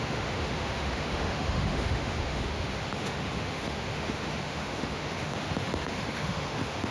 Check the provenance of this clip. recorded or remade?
remade